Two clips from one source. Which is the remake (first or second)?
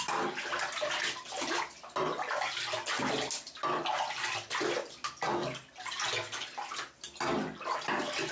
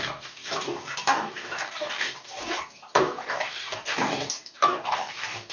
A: second